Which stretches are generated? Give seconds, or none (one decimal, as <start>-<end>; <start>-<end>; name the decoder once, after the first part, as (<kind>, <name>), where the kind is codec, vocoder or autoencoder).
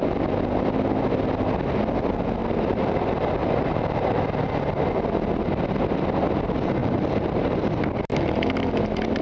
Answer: 2.4-3.0 (vocoder, BigVGAN v2); 3.4-4.2; 6.8-7.6